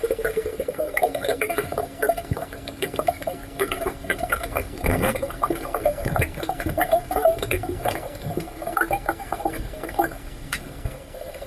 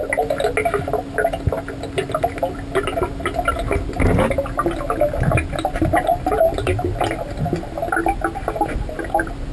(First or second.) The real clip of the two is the second